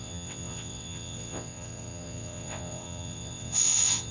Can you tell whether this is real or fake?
fake